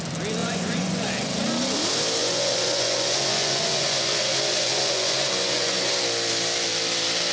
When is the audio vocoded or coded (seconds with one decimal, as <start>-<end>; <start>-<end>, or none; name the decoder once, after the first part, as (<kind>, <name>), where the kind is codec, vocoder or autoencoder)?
0.4-1.1 (vocoder, Vocos); 2.2-5.9